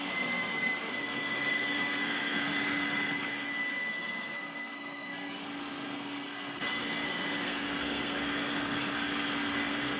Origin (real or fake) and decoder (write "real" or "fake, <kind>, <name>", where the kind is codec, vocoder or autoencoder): fake, codec, SNAC